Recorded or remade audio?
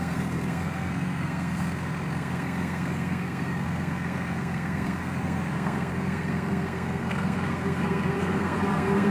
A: remade